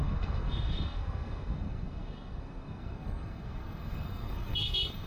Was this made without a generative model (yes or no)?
no